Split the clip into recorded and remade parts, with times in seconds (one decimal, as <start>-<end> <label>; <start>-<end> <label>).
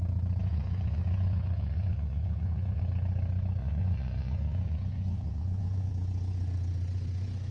0.0-0.4 recorded; 0.4-2.8 remade; 2.8-3.6 recorded; 3.6-5.9 remade; 5.9-7.5 recorded